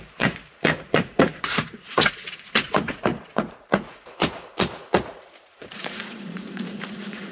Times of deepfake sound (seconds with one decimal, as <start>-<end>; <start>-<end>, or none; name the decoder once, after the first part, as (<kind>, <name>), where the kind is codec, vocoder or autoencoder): 0.0-7.3 (vocoder, Vocos)